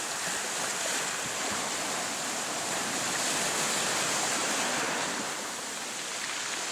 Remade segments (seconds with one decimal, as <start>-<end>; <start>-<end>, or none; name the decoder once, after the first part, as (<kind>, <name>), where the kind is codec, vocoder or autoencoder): none